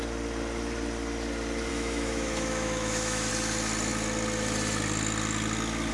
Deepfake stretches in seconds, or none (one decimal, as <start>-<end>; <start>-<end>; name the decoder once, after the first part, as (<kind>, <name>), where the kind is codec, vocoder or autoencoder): 1.7-3.3 (autoencoder, DAC-VAE)